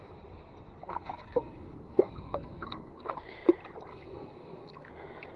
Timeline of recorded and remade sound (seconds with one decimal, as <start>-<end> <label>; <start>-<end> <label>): 0.0-0.8 recorded; 0.8-3.1 remade; 3.1-3.9 recorded; 3.9-4.9 remade; 4.9-5.4 recorded